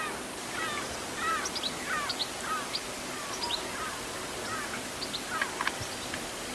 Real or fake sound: real